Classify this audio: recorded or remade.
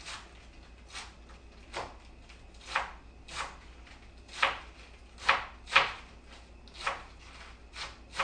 recorded